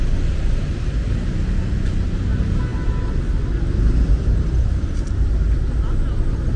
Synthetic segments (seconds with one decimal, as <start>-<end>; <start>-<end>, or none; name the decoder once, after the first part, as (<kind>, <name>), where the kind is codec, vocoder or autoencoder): none